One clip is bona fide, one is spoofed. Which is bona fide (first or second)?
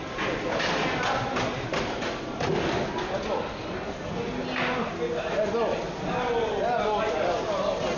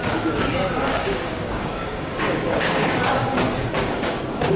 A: first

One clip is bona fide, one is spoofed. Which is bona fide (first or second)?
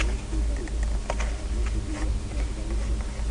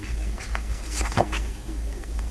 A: first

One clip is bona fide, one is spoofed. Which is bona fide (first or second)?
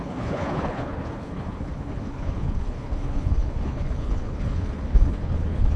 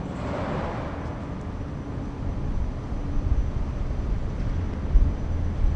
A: second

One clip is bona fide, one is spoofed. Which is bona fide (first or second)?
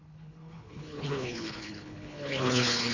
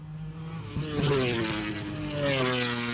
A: second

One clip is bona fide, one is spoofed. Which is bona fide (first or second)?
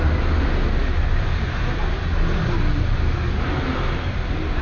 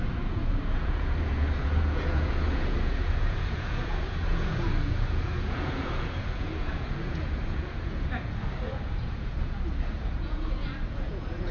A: first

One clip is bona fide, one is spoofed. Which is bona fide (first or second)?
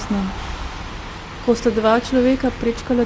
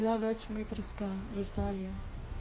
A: first